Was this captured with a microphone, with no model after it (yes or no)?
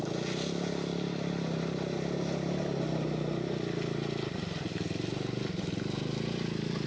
yes